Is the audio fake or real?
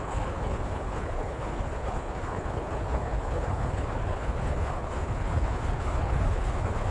fake